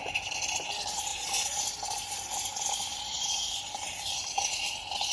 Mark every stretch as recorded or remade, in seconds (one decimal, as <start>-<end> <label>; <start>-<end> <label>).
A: 0.0-1.1 recorded; 1.1-1.6 remade; 1.6-2.9 recorded; 2.9-3.6 remade; 3.6-5.1 recorded